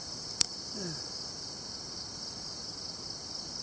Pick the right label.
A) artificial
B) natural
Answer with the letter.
B